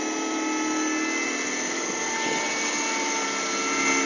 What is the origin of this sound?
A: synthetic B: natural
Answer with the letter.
B